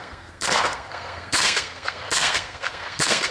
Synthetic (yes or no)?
yes